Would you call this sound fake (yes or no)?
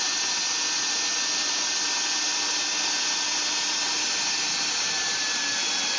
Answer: no